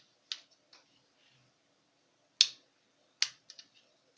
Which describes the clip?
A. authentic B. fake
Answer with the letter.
A